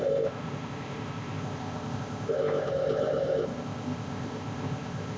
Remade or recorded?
remade